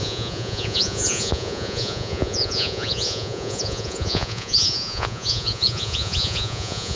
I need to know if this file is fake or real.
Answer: fake